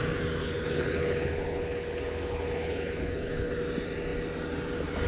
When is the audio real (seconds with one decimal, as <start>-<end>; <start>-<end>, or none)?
0.0-0.4; 3.5-5.1